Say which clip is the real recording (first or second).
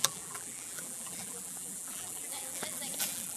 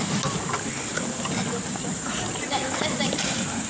second